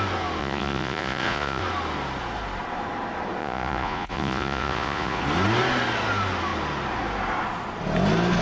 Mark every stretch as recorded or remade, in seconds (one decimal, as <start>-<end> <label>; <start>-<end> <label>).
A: 0.0-0.4 recorded; 0.4-1.6 remade; 1.6-3.4 recorded; 3.4-5.2 remade; 5.2-8.4 recorded